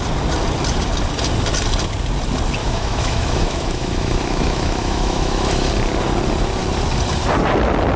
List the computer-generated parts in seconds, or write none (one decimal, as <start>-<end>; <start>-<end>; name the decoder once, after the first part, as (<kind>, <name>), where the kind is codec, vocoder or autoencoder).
2.6-5.7 (autoencoder, DAC-VAE)